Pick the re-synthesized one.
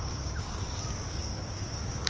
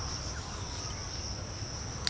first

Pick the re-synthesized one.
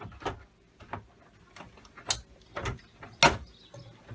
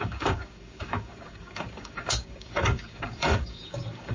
second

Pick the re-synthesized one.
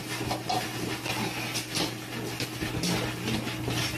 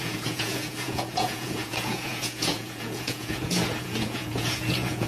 second